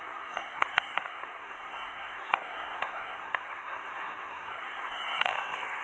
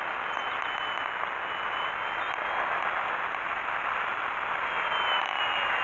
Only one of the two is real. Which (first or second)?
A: second